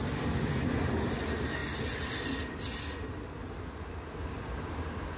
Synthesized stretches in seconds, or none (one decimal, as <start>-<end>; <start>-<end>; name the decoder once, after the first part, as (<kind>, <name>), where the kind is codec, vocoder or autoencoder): none